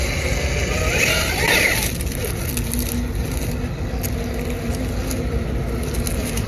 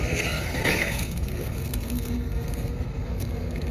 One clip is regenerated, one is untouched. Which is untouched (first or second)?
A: first